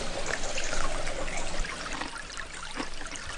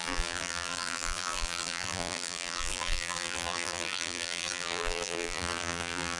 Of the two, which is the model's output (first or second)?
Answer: second